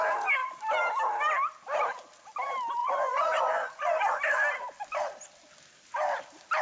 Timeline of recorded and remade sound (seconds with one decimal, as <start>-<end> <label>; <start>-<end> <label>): 0.0-2.8 recorded; 2.8-4.2 remade; 4.2-6.6 recorded